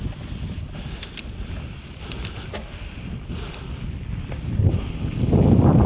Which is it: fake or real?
real